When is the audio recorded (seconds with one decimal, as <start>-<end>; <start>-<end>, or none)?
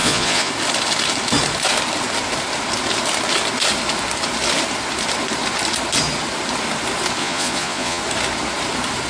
0.5-7.2; 8.0-9.1